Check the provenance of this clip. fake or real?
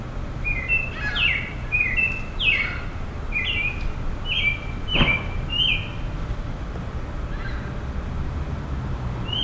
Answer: real